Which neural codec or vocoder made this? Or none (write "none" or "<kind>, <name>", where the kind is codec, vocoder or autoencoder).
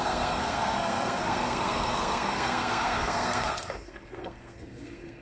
codec, SNAC